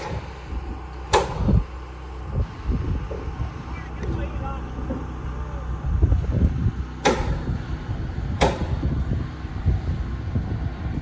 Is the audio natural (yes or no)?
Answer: yes